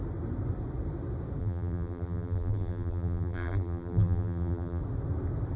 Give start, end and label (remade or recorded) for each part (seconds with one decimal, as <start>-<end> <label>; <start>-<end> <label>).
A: 0.0-1.4 recorded; 1.4-4.8 remade; 4.8-5.6 recorded